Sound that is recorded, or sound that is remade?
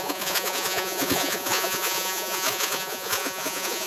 remade